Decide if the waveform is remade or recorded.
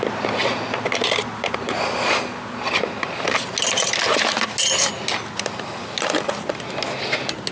recorded